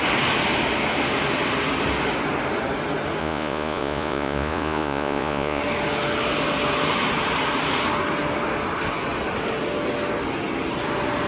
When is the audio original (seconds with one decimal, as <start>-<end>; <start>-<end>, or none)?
0.0-3.2; 5.6-11.3